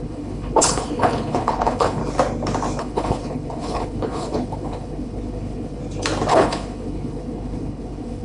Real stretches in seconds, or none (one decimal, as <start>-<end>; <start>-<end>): 2.0-2.8; 5.8-6.3